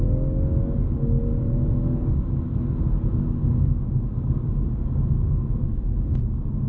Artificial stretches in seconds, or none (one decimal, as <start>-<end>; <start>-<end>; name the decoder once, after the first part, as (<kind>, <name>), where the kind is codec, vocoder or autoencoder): 1.3-2.1 (codec, DAC); 2.5-6.7